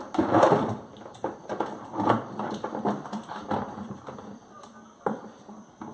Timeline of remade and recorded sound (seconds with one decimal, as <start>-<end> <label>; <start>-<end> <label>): 0.0-5.9 recorded